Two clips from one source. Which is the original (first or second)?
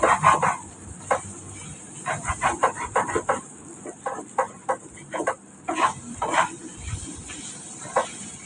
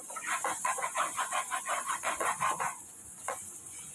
first